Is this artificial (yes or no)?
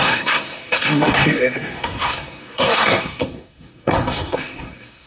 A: yes